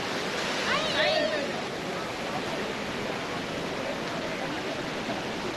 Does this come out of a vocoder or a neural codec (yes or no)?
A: no